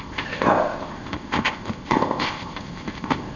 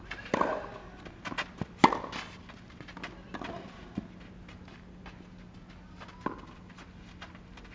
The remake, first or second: first